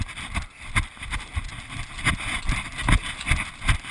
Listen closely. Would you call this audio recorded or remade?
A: recorded